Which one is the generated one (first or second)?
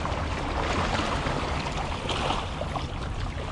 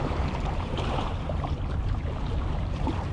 second